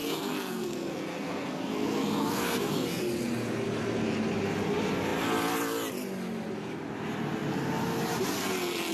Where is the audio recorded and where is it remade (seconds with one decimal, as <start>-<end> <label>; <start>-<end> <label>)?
0.0-3.0 remade; 3.0-8.9 recorded